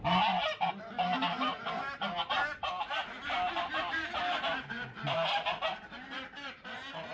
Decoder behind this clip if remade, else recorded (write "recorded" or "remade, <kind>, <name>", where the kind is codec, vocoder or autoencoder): recorded